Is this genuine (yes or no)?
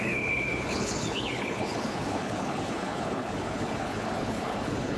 no